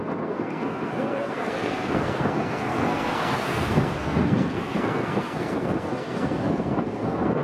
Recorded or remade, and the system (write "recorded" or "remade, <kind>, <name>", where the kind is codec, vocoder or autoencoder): remade, codec, SNAC